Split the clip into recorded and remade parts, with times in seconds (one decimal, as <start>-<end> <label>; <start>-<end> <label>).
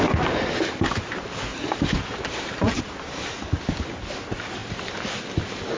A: 0.0-1.5 recorded; 1.5-2.8 remade; 2.8-5.8 recorded